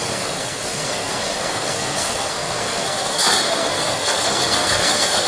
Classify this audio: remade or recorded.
remade